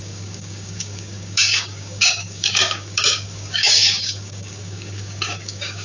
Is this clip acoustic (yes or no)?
no